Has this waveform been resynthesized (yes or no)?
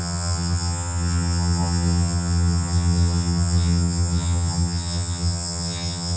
yes